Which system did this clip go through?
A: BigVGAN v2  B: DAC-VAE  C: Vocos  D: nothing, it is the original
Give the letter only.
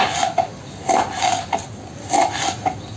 D